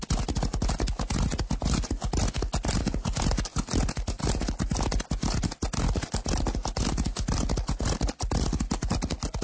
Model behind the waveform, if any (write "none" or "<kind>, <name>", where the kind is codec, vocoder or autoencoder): none